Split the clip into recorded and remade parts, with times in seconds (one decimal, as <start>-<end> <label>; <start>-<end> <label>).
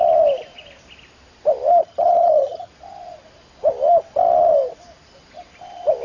0.0-1.8 recorded; 1.8-2.7 remade; 2.7-6.0 recorded